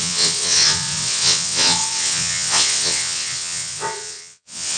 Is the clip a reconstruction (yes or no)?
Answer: yes